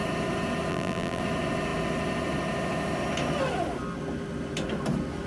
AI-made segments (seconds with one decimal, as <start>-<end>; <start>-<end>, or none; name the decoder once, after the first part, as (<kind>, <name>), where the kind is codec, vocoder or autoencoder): 0.7-1.2 (vocoder, BigVGAN v2)